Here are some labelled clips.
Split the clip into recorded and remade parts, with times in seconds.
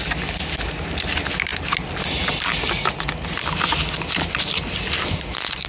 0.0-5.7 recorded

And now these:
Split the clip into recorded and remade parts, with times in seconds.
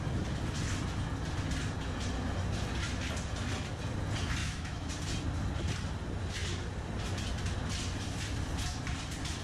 0.0-4.4 recorded; 4.4-4.9 remade; 4.9-9.4 recorded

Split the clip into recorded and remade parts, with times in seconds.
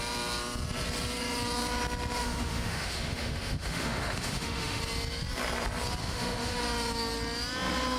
0.0-2.2 recorded; 2.2-4.8 remade; 4.8-6.0 recorded; 6.0-6.6 remade; 6.6-8.0 recorded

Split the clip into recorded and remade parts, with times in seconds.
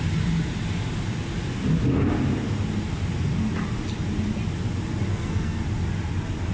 0.0-5.1 recorded; 5.1-5.6 remade; 5.6-6.5 recorded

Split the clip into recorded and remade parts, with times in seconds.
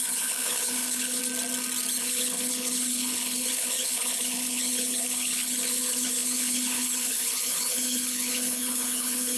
0.0-1.2 remade; 1.2-2.0 recorded; 2.0-9.4 remade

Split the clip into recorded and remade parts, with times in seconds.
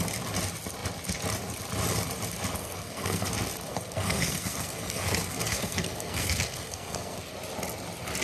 0.0-2.6 recorded; 2.6-3.3 remade; 3.3-3.7 recorded; 3.7-7.3 remade; 7.3-8.2 recorded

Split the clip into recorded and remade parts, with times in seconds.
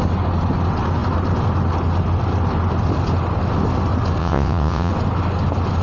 0.0-4.2 recorded; 4.2-4.9 remade; 4.9-5.8 recorded